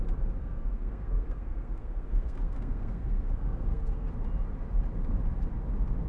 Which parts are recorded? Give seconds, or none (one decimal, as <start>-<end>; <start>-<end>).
0.0-0.4; 4.1-6.1